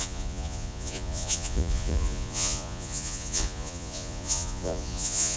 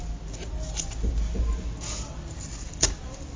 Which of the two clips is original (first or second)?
second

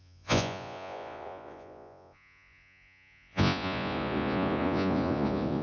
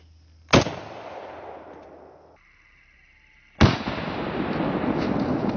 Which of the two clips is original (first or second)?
second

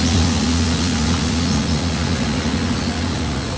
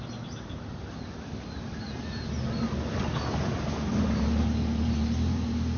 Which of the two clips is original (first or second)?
second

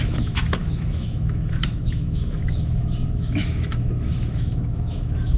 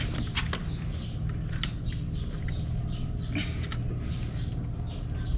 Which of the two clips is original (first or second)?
second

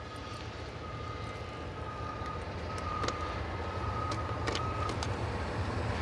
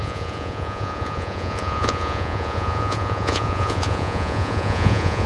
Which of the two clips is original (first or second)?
first